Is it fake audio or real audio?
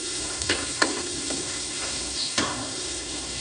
fake